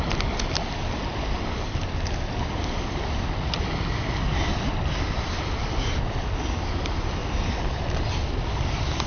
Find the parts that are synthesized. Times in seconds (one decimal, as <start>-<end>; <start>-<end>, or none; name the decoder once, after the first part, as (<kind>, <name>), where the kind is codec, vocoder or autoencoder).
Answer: none